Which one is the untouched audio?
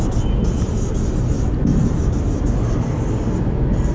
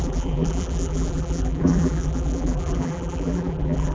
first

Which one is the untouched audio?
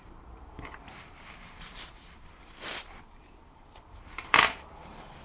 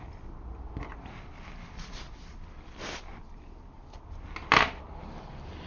second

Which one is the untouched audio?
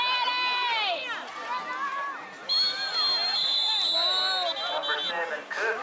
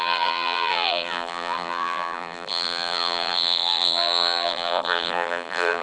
first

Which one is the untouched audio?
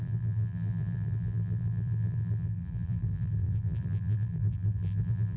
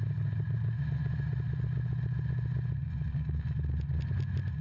second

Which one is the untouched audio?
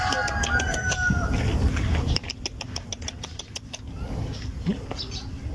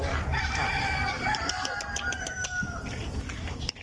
first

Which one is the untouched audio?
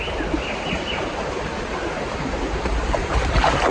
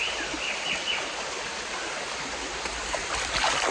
second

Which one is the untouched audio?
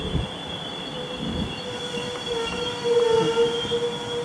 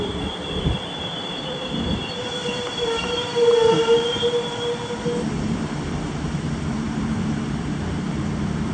first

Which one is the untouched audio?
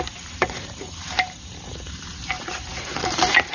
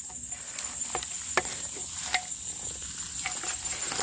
second